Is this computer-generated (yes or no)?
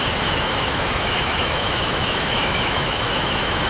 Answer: yes